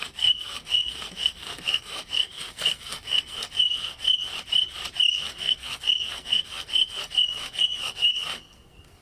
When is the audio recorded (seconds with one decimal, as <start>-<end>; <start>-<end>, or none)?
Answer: 4.3-5.1